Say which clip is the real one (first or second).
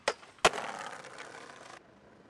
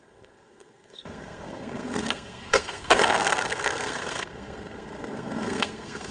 first